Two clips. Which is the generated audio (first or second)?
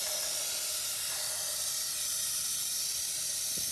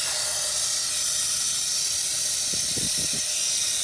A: first